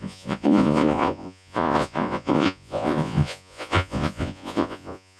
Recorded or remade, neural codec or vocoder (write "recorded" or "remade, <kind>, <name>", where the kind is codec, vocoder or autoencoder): remade, vocoder, Vocos